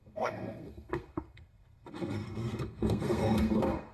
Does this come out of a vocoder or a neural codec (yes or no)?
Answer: yes